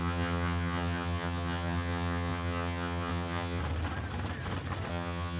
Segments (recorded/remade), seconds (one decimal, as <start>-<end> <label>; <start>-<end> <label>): 0.0-3.6 remade; 3.6-4.9 recorded; 4.9-5.4 remade